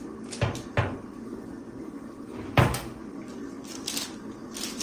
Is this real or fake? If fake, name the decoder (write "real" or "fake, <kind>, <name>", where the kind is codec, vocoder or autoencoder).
real